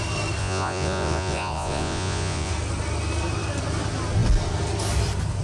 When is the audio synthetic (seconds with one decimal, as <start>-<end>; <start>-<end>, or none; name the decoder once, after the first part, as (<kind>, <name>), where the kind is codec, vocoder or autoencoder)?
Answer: 0.4-2.5 (vocoder, Vocos)